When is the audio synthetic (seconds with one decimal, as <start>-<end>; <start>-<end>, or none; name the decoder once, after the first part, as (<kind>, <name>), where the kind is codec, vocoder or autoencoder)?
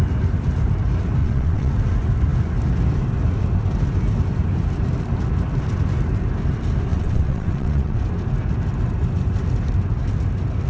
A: 1.2-1.7 (vocoder, WaveNeXt); 6.9-8.0